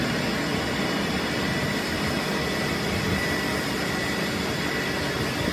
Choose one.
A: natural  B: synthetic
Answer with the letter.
B